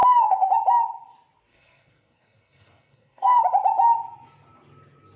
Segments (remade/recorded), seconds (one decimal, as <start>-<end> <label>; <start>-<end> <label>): 0.0-0.5 remade; 0.5-1.5 recorded; 1.5-3.4 remade; 3.4-5.2 recorded

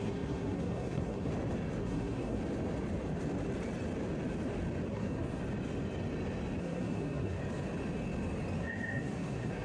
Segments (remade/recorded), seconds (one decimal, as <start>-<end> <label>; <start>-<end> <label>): 0.0-1.3 remade; 1.3-1.8 recorded; 1.8-2.4 remade; 2.4-4.9 recorded; 4.9-5.4 remade; 5.4-6.6 recorded; 6.6-7.4 remade; 7.4-8.6 recorded; 8.6-9.6 remade

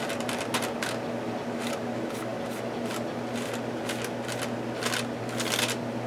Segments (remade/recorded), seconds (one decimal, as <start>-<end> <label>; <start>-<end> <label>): 0.0-6.1 recorded

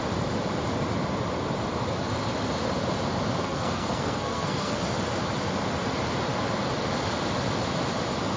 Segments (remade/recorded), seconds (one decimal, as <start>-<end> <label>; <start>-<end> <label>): 0.0-3.4 recorded; 3.4-4.8 remade; 4.8-8.4 recorded

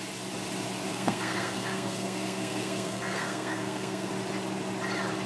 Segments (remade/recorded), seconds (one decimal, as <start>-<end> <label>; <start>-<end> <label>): 0.0-0.9 recorded; 0.9-4.1 remade; 4.1-5.3 recorded

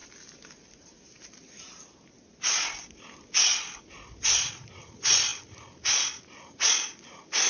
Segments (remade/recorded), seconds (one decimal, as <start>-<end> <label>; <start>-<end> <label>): 0.0-7.5 recorded